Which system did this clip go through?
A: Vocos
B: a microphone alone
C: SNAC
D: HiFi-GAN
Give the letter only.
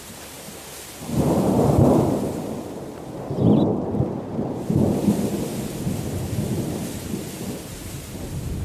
B